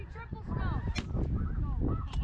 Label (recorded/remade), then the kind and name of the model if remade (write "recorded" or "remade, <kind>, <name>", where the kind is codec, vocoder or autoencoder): recorded